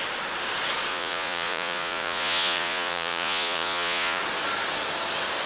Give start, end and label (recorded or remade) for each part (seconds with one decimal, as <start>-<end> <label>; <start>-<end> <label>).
0.0-0.9 recorded; 0.9-4.2 remade; 4.2-5.5 recorded